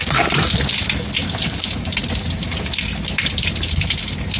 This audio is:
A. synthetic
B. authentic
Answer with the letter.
B